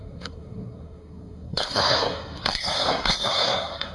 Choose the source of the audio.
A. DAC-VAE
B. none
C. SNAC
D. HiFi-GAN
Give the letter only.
C